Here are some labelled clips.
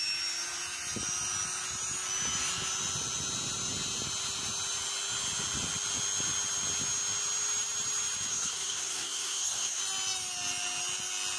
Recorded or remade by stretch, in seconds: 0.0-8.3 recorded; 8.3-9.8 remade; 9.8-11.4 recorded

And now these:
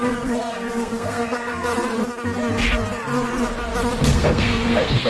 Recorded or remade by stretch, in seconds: 0.0-1.7 remade; 1.7-4.0 recorded; 4.0-5.1 remade

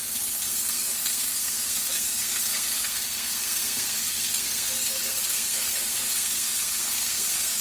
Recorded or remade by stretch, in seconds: 0.0-7.6 remade